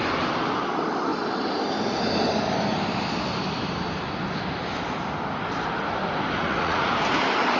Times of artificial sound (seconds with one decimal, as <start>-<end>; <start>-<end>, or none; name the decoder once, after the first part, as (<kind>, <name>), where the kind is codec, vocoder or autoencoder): 6.4-6.9 (vocoder, Vocos)